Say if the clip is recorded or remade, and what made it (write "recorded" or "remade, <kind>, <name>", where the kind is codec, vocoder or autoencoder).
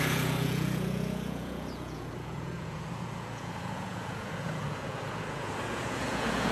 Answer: remade, vocoder, Vocos